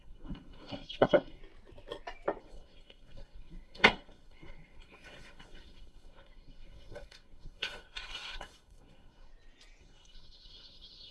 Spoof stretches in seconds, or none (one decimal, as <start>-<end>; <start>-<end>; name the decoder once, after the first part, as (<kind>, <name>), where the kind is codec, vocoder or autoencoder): 0.0-1.4 (codec, SNAC); 2.4-9.3; 9.8-11.1

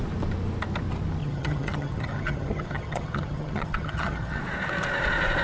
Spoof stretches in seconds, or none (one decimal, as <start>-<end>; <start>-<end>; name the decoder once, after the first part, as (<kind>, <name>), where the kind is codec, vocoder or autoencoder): 1.2-4.4 (vocoder, HiFi-GAN)